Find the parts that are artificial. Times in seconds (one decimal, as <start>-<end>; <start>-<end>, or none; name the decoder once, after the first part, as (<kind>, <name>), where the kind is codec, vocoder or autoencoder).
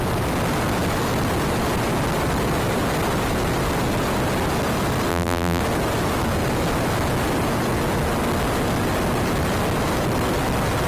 5.1-5.6 (vocoder, BigVGAN v2)